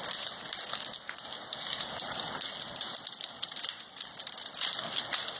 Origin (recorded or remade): recorded